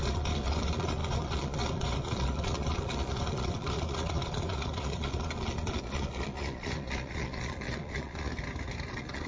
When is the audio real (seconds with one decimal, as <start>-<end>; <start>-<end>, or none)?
8.3-8.9